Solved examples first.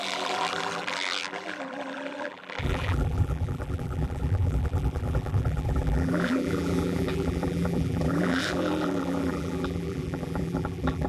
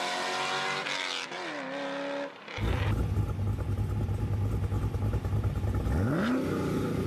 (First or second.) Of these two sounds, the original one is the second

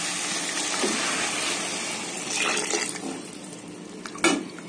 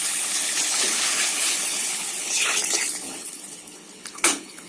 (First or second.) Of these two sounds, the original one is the first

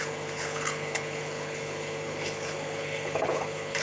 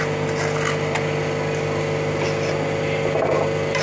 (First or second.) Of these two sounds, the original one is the second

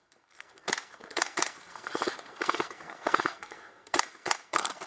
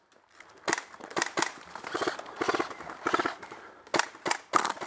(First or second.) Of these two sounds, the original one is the second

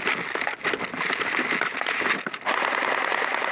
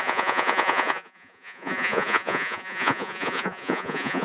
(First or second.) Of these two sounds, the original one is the first